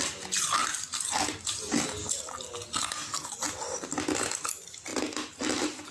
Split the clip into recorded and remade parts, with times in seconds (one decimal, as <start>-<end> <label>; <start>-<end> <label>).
0.0-4.9 recorded; 4.9-5.9 remade